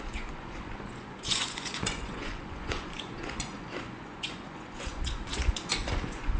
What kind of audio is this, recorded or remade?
remade